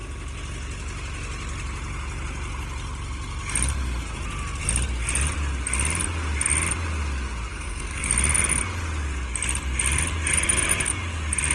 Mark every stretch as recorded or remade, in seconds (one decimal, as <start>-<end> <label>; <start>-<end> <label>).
0.0-7.5 recorded; 7.5-8.1 remade; 8.1-11.5 recorded